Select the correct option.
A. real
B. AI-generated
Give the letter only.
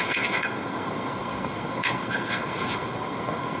B